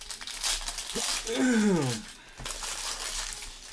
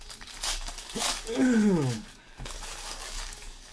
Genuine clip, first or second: first